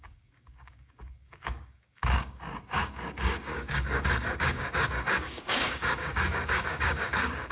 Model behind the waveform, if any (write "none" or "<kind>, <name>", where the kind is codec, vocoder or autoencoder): codec, DAC